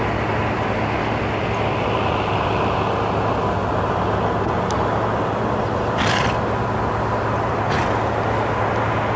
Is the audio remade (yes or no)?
no